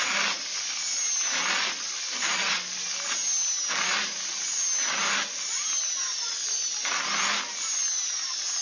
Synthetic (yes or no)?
no